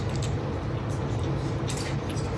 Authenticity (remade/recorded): recorded